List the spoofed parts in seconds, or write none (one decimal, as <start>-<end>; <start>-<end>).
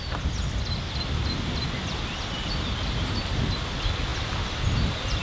none